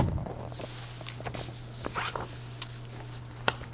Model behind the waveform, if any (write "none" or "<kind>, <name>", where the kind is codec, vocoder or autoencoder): none